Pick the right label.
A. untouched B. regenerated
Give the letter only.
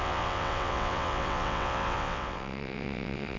B